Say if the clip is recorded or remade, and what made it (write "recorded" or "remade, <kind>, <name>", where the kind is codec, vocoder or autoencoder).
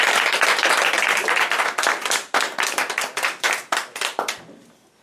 recorded